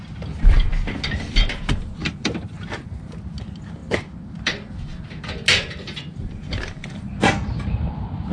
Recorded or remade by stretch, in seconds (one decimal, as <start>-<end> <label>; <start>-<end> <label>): 0.0-2.0 recorded; 2.0-2.9 remade; 2.9-3.8 recorded; 3.8-4.7 remade; 4.7-5.5 recorded; 5.5-7.3 remade; 7.3-8.3 recorded